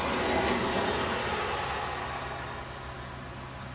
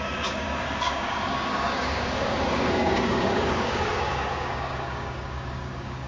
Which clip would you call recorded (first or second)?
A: first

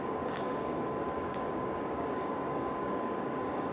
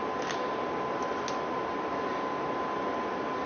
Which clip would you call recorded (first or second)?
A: second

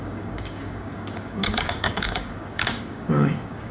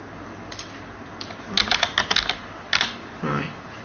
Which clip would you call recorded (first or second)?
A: second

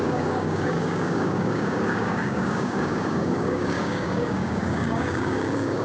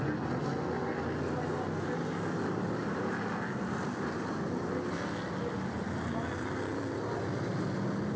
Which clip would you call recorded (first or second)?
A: second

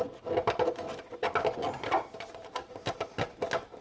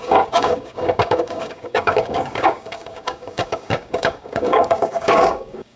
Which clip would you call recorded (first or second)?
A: first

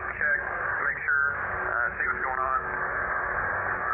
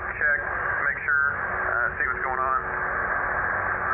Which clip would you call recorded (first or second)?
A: second